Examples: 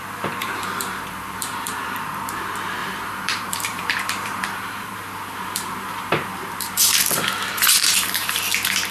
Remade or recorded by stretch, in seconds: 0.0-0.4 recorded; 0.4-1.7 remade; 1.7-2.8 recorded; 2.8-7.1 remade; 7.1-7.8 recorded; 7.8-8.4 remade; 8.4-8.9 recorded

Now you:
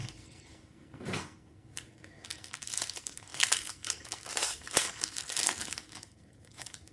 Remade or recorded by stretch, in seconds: 0.0-6.9 remade

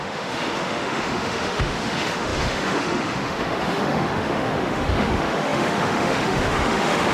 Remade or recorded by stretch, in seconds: 0.0-7.1 remade